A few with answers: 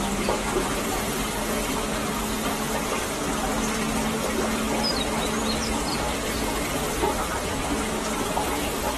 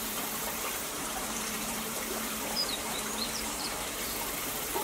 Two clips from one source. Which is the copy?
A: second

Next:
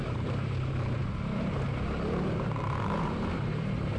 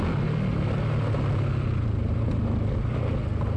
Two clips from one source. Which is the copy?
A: first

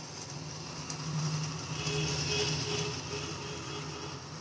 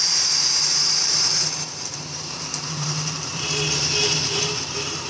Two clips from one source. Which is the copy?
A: second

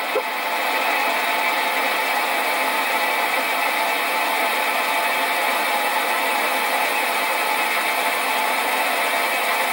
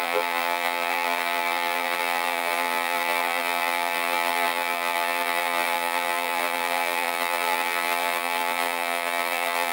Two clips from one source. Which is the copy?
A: second